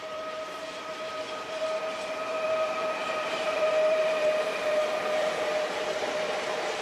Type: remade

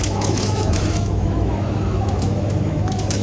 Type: remade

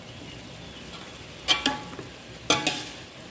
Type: recorded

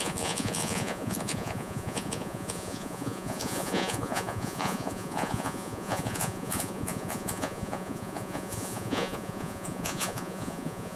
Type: remade